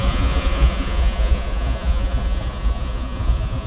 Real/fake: fake